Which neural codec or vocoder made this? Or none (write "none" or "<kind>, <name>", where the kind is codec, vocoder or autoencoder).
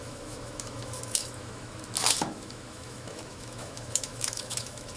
autoencoder, DAC-VAE